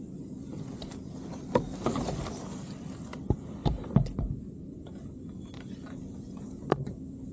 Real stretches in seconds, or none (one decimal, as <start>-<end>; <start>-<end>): 0.0-7.3